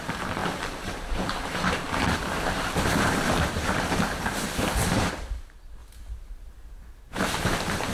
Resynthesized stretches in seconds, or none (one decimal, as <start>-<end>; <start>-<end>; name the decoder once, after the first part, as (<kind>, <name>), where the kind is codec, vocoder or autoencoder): 0.0-5.8 (vocoder, BigVGAN v2); 7.0-7.9